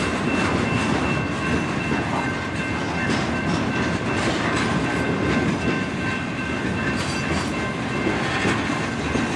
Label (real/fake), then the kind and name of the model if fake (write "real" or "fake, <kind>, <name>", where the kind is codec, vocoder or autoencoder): real